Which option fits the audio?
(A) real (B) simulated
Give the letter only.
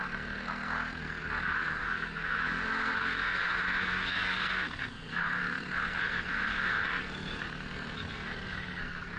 B